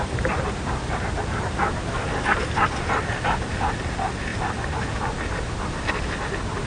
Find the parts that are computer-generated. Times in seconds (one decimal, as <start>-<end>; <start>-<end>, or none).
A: none